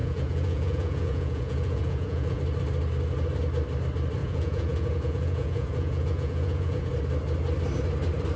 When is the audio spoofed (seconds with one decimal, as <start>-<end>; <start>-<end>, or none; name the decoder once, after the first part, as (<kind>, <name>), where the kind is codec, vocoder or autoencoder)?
0.0-2.4 (vocoder, Vocos); 4.2-6.9